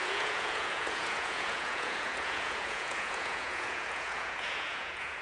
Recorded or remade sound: remade